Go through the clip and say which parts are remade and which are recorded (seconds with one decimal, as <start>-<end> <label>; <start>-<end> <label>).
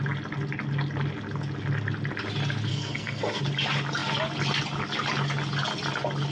0.0-2.7 recorded; 2.7-3.4 remade; 3.4-6.3 recorded